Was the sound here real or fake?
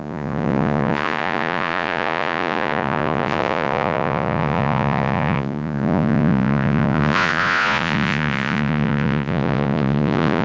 fake